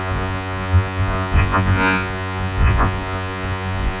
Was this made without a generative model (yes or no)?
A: no